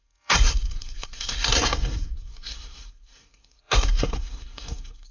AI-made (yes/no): yes